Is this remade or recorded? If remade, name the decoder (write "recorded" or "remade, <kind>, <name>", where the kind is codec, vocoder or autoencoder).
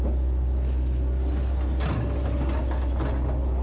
recorded